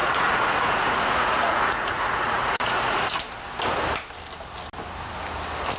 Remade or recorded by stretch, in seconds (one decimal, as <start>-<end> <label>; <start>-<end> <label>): 0.0-3.0 remade; 3.0-5.8 recorded